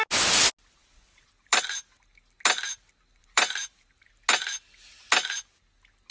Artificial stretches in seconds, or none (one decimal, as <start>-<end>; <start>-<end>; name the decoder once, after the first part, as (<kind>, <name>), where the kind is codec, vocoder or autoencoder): 0.8-1.6 (vocoder, BigVGAN v2); 3.2-4.1